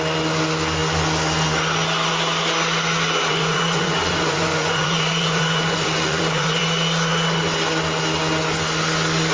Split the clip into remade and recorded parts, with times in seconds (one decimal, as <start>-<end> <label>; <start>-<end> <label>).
0.0-3.3 recorded; 3.3-6.6 remade; 6.6-9.3 recorded

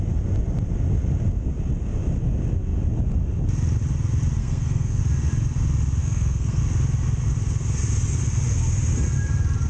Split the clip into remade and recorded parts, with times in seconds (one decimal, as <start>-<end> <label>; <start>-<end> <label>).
0.0-4.4 recorded; 4.4-5.0 remade; 5.0-6.0 recorded; 6.0-6.6 remade; 6.6-9.7 recorded

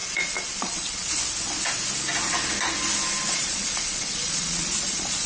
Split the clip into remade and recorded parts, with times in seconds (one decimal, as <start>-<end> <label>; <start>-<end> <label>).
0.0-1.2 remade; 1.2-3.3 recorded; 3.3-5.3 remade

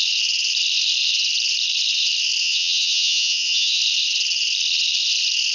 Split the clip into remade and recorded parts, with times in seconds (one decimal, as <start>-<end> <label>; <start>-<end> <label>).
0.0-2.4 recorded; 2.4-3.8 remade; 3.8-5.5 recorded